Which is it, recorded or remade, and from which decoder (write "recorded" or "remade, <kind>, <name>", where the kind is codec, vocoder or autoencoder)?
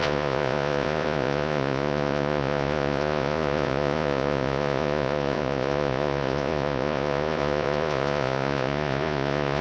remade, vocoder, Vocos